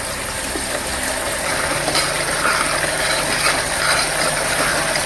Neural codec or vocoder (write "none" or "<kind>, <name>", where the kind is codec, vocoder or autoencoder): none